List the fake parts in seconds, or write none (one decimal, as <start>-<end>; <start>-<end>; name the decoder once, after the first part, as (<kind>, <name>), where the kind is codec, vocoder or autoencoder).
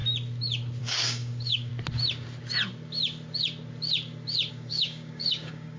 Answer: 0.8-1.7 (codec, DAC); 4.5-5.8